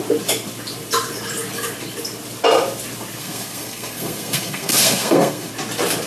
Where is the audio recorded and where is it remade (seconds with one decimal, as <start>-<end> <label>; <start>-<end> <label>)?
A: 0.0-3.2 recorded; 3.2-5.5 remade; 5.5-6.1 recorded